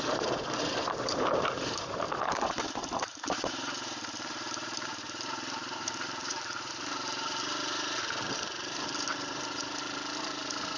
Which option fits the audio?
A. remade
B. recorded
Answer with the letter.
A